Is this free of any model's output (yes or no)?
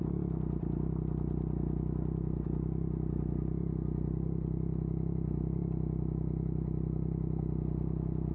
yes